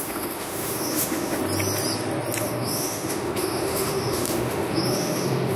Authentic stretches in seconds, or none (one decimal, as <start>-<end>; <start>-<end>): 1.4-2.4